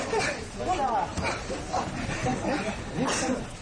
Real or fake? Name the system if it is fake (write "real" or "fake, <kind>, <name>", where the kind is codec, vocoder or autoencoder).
real